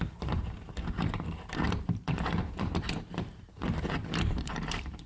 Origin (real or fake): fake